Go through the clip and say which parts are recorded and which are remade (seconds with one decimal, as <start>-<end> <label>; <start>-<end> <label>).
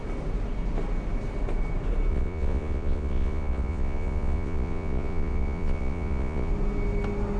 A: 0.0-2.1 recorded; 2.1-6.5 remade; 6.5-7.4 recorded